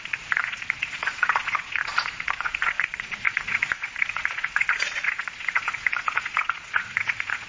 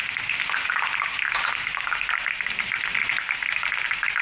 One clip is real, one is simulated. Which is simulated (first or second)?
first